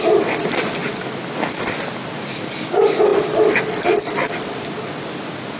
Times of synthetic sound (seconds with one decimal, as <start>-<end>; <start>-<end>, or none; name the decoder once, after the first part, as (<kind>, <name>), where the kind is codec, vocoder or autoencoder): none

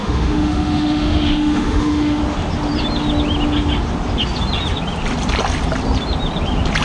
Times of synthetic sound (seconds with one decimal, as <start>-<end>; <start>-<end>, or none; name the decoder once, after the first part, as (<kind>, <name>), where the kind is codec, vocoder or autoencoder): 0.0-2.2 (autoencoder, DAC-VAE)